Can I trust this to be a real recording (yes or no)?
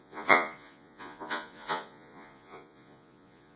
no